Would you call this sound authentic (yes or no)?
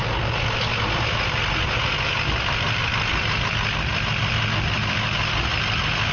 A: yes